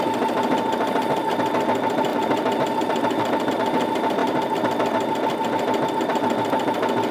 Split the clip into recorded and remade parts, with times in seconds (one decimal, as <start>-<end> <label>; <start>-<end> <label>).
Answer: 0.0-2.1 recorded; 2.1-3.5 remade; 3.5-7.1 recorded